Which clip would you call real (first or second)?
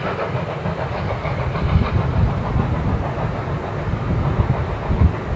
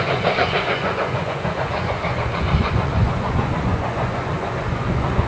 first